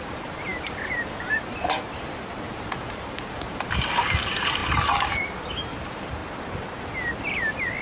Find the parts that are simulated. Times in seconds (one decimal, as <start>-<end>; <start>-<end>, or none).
0.0-6.2